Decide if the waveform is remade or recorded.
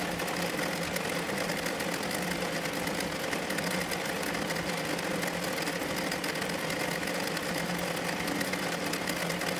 recorded